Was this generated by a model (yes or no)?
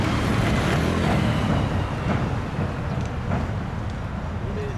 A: no